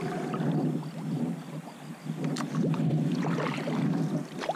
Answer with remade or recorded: remade